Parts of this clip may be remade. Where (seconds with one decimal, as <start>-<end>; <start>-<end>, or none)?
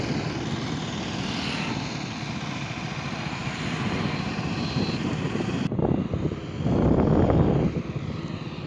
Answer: none